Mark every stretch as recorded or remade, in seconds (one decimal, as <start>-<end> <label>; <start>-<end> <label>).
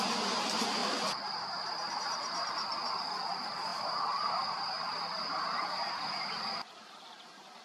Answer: 0.0-0.8 recorded; 0.8-2.5 remade; 2.5-3.7 recorded; 3.7-6.3 remade; 6.3-7.6 recorded